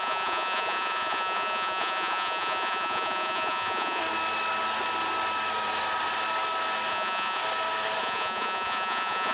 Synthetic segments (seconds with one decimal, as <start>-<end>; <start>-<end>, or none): 0.0-4.0; 6.9-7.4; 8.0-9.3